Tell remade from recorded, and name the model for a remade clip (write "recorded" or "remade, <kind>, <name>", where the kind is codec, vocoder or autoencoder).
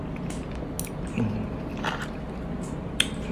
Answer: recorded